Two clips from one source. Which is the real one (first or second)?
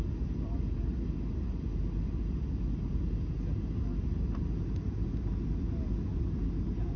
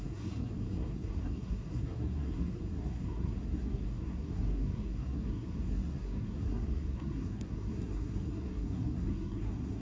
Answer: first